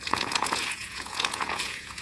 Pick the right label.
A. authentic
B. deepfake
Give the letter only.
B